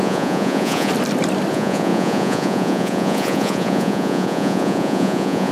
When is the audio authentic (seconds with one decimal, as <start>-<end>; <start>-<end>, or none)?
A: 0.9-1.5